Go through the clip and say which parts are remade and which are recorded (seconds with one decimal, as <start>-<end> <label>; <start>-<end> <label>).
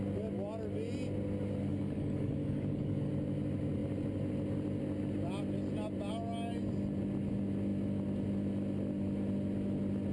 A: 0.0-1.7 recorded; 1.7-3.1 remade; 3.1-10.1 recorded